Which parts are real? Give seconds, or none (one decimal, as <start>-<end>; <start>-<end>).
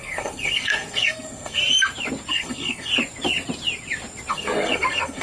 1.6-2.3; 2.9-4.3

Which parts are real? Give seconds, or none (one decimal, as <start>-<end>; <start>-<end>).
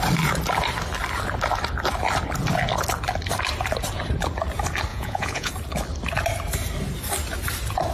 0.0-4.9; 5.5-7.9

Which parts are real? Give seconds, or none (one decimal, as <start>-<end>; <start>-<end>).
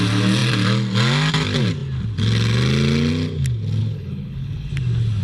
0.0-3.8; 4.7-5.2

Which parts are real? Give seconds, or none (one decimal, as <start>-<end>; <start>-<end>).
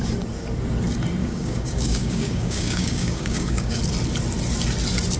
0.0-1.2; 3.8-5.2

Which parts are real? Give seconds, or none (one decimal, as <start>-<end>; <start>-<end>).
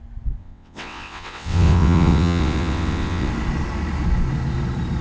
0.0-0.4; 3.3-5.0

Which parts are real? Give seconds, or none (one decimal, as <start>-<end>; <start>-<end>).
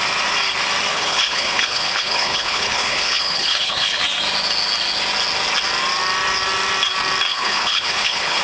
0.0-0.9; 4.0-7.3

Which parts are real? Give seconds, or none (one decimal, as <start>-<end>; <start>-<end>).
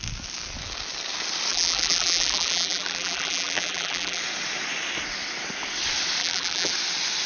0.0-1.5; 4.2-6.2; 6.7-7.3